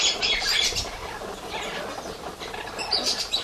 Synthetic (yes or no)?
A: no